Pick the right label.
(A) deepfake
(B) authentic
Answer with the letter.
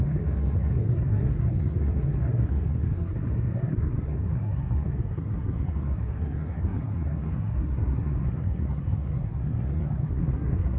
A